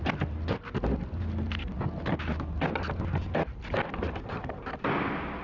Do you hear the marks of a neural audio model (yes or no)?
no